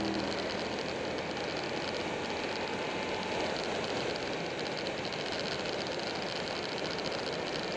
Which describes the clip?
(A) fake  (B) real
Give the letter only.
B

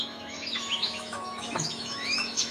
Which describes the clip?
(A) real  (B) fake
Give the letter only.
B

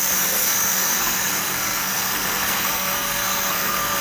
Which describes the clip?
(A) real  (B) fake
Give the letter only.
B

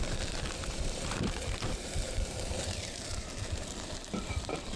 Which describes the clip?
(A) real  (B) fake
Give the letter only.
B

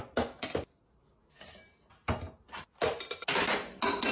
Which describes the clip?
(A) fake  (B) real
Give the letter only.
B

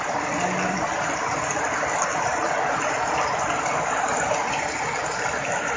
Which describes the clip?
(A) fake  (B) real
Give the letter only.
B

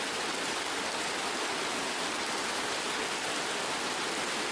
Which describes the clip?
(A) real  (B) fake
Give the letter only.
A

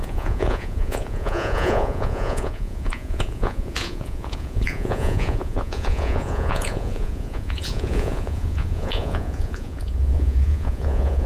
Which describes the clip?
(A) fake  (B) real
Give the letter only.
A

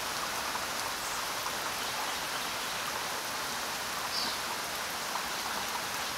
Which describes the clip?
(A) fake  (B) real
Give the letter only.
B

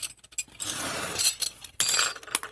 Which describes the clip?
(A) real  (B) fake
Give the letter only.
A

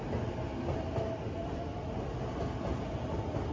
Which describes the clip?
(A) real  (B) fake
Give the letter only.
A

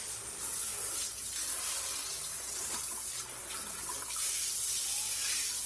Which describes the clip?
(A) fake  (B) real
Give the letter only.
B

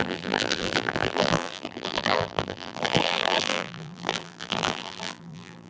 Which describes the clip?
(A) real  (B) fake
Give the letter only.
B